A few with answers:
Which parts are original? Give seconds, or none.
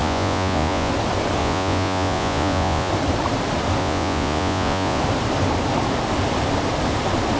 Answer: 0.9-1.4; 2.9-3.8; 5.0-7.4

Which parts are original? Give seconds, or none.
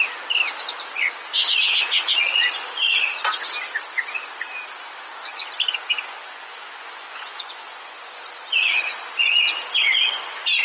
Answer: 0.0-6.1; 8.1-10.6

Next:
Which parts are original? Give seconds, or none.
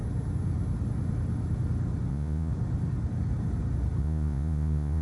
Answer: 0.0-2.1; 2.5-4.0